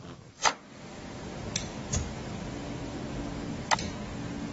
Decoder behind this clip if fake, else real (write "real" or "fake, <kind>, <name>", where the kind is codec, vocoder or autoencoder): real